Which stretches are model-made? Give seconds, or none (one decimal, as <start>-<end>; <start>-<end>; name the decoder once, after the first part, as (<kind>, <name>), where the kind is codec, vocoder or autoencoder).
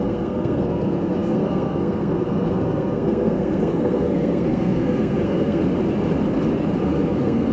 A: 0.0-5.6 (codec, SNAC); 6.8-7.5